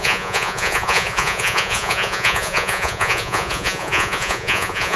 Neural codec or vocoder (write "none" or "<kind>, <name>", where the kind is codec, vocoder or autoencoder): vocoder, Vocos